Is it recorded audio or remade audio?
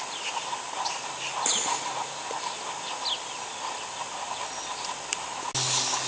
recorded